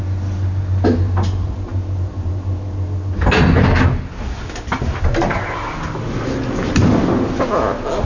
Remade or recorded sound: recorded